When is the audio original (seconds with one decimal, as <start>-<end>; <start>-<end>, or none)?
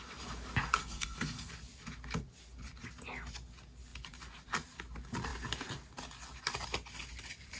0.0-0.8; 1.5-7.6